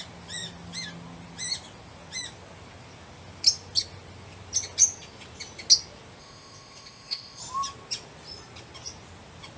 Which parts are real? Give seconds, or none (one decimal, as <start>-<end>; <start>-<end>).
0.0-6.2; 7.4-9.6